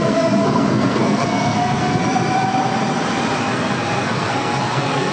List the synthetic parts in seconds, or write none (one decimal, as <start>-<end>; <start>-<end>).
0.0-2.0; 3.4-5.1

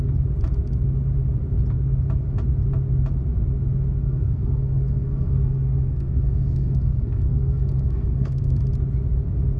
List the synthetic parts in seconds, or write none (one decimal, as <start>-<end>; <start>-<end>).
4.0-8.6